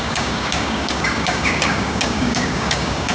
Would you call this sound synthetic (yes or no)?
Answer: yes